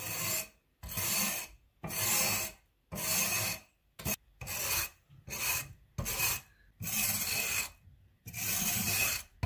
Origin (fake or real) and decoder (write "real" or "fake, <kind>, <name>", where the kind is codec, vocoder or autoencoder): real